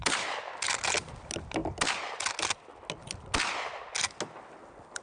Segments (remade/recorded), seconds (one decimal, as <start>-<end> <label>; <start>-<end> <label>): 0.0-5.0 recorded